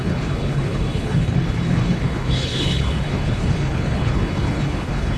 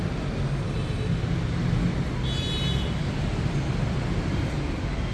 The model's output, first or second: first